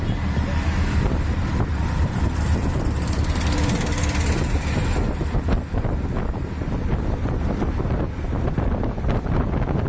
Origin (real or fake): real